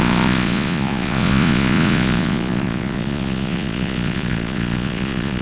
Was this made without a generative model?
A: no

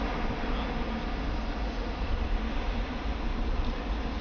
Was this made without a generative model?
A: yes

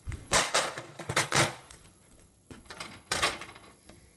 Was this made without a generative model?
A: no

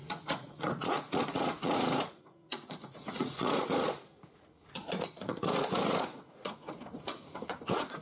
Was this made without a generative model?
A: no